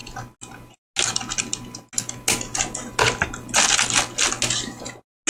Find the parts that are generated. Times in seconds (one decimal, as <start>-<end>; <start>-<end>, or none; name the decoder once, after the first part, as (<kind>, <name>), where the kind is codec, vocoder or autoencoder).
none